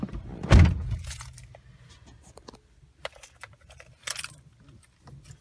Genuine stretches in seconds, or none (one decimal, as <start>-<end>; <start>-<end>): 0.0-0.8; 1.3-5.4